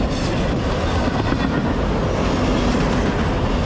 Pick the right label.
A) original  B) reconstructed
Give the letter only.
A